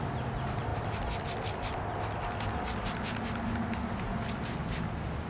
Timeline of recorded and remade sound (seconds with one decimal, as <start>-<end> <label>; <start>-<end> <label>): 0.0-5.3 recorded